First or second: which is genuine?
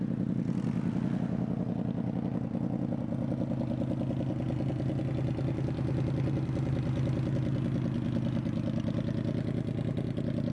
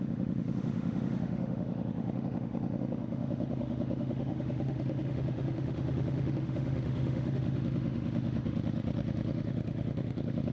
first